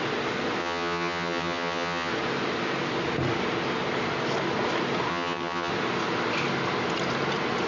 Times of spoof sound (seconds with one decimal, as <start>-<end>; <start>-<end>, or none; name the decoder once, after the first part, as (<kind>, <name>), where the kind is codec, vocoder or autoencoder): 0.6-2.1 (vocoder, HiFi-GAN); 5.1-5.7